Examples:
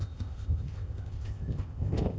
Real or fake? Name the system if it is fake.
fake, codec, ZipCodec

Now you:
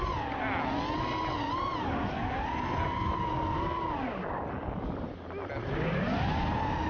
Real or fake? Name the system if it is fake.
real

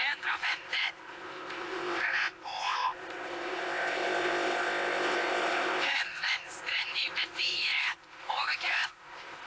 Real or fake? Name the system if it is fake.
fake, codec, ZipCodec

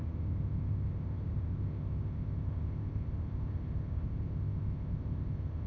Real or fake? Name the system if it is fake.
fake, codec, ZipCodec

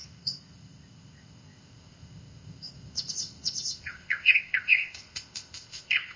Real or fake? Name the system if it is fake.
fake, codec, ZipCodec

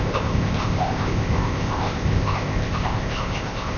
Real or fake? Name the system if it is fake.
fake, codec, ZipCodec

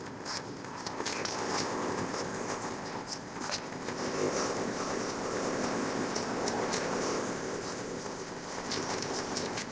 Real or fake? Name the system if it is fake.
fake, codec, ZipCodec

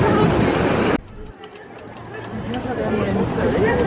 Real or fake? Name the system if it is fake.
real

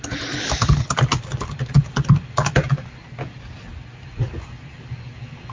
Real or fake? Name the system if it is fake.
real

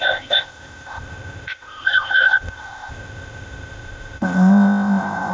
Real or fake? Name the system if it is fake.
fake, codec, ZipCodec